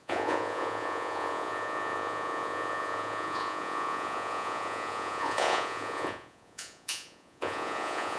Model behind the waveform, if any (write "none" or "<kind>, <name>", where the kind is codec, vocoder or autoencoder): vocoder, Vocos